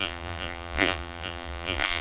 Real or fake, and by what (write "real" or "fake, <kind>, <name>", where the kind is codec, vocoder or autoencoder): fake, vocoder, BigVGAN v2